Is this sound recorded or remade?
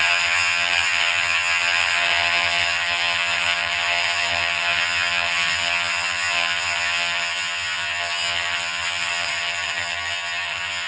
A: remade